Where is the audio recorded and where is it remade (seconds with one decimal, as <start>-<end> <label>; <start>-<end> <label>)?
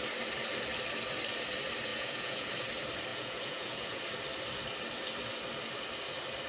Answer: 0.0-1.9 recorded; 1.9-2.5 remade; 2.5-3.1 recorded; 3.1-4.0 remade; 4.0-6.5 recorded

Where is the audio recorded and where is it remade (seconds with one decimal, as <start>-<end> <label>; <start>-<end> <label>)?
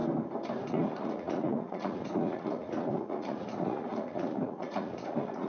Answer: 0.0-0.7 recorded; 0.7-5.5 remade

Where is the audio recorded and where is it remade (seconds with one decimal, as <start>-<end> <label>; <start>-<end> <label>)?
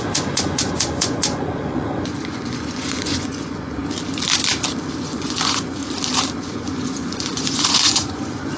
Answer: 0.0-3.8 remade; 3.8-5.0 recorded; 5.0-5.8 remade; 5.8-6.5 recorded; 6.5-8.6 remade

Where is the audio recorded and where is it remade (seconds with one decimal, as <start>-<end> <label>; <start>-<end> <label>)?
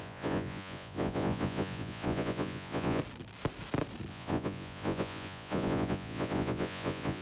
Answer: 0.0-3.0 remade; 3.0-4.1 recorded; 4.1-7.2 remade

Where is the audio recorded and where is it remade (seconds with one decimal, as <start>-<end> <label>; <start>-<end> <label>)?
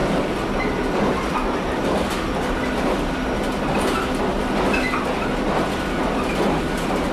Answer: 0.0-7.1 recorded